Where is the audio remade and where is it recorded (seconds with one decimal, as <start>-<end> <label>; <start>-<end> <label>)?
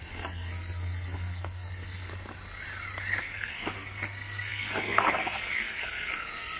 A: 0.0-2.1 remade; 2.1-3.2 recorded; 3.2-6.6 remade